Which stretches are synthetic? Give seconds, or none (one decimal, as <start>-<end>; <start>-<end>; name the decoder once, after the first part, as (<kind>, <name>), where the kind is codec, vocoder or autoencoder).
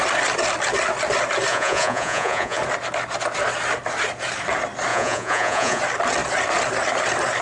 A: 1.5-2.6 (vocoder, Vocos); 4.9-5.8